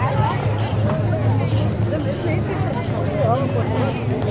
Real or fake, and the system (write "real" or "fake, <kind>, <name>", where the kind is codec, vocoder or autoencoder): real